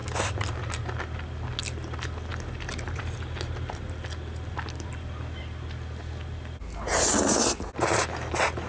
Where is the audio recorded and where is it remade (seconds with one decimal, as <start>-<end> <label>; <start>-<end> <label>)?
0.0-8.7 recorded